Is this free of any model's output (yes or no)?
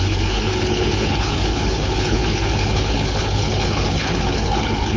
no